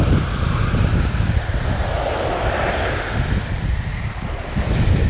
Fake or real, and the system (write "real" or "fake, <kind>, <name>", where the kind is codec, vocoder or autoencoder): real